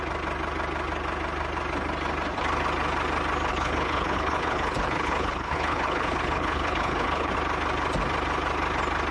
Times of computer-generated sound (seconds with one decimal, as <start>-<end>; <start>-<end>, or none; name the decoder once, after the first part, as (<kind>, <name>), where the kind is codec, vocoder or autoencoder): 3.5-7.3 (codec, HILCodec)